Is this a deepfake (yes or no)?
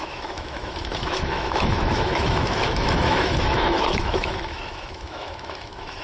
yes